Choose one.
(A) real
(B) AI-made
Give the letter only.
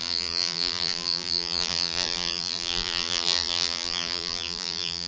B